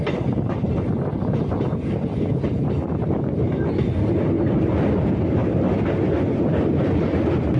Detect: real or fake real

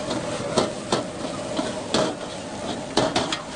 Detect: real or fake real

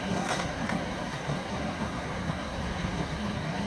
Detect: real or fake fake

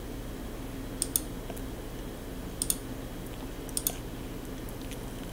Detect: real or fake real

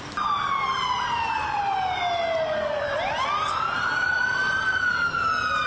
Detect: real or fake real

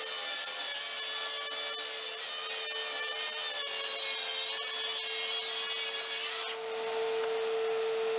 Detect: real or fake real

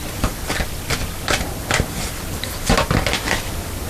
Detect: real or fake real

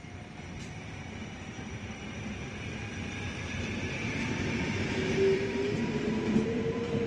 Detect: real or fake fake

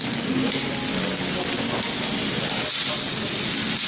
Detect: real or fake real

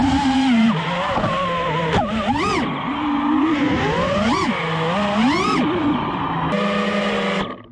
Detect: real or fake real